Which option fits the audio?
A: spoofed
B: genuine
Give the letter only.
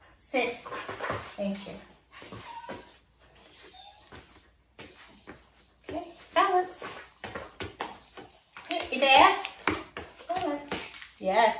B